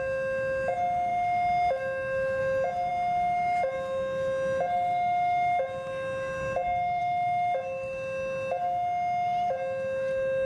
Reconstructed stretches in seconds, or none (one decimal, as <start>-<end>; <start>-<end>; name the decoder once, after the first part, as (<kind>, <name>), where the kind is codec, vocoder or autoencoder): none

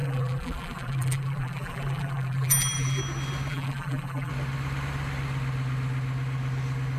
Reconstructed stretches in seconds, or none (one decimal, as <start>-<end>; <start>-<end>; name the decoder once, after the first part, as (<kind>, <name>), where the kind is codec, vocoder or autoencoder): 0.0-3.0 (vocoder, BigVGAN v2); 3.5-4.3